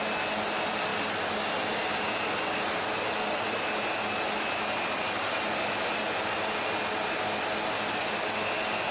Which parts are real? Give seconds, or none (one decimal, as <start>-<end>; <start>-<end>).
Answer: 0.0-8.9